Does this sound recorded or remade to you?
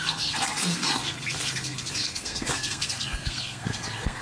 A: remade